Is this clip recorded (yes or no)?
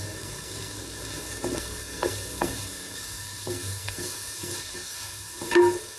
no